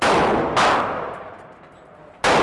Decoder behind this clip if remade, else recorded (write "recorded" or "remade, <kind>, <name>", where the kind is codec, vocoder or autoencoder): recorded